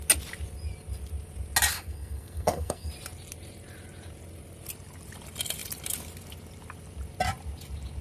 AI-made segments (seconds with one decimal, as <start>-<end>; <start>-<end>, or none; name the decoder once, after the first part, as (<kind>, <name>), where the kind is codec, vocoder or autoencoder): 1.7-2.9 (codec, SNAC)